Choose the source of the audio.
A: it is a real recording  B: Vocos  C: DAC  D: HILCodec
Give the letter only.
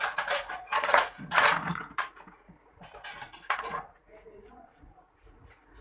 B